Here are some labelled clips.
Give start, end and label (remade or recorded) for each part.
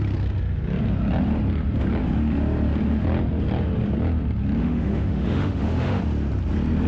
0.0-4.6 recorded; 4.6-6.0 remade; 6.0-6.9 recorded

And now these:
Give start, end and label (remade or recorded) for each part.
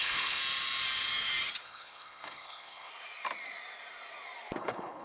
0.0-0.4 remade; 0.4-1.6 recorded; 1.6-2.9 remade; 2.9-4.6 recorded; 4.6-5.0 remade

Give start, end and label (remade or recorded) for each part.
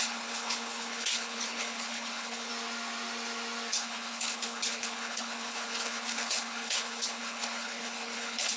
0.0-2.5 remade; 2.5-3.7 recorded; 3.7-8.6 remade